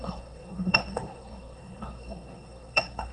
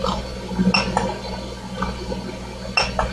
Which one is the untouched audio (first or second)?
second